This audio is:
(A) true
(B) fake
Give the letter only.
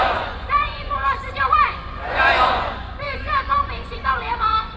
B